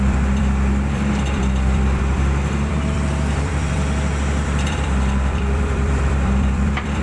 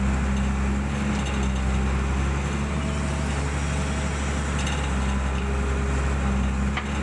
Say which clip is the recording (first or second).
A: second